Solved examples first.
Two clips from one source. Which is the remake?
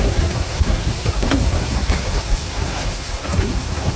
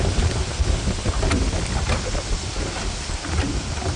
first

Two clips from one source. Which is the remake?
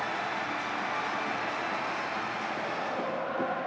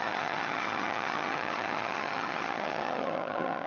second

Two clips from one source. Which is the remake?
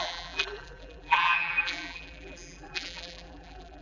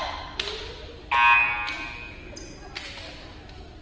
first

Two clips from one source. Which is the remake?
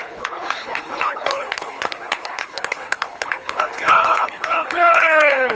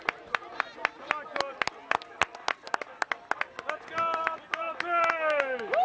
first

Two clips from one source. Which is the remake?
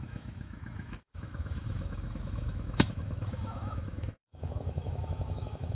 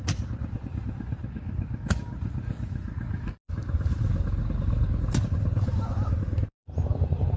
first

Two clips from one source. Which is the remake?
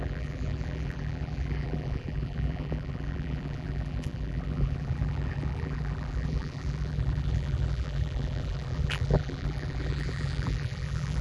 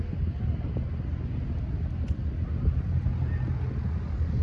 first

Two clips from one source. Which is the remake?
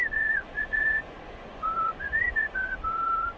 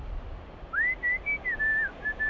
first